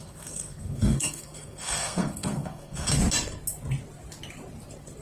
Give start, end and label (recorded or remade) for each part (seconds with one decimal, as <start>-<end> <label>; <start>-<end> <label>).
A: 0.0-3.0 remade; 3.0-5.0 recorded